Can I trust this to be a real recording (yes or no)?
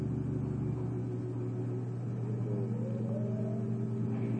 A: yes